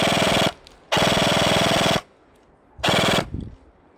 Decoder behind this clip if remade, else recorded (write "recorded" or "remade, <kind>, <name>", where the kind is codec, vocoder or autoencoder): recorded